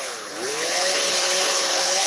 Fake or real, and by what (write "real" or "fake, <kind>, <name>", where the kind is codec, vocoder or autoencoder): fake, codec, HILCodec